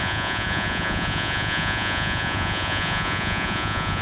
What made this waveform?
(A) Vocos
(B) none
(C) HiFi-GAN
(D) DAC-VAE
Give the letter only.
A